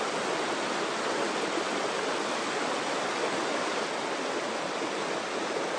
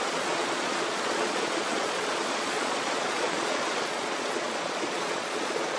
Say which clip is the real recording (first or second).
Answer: first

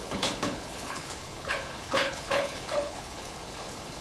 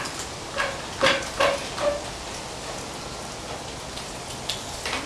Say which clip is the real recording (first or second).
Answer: second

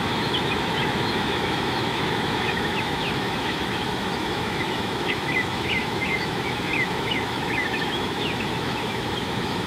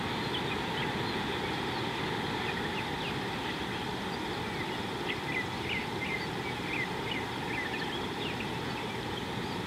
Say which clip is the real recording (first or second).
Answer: second